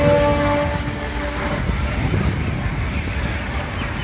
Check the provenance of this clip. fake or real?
real